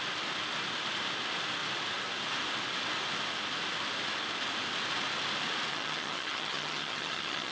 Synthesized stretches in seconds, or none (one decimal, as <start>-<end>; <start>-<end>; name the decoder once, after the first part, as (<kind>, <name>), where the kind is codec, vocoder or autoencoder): 5.7-7.5 (vocoder, HiFi-GAN)